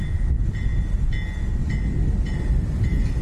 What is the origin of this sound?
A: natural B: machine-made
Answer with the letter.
A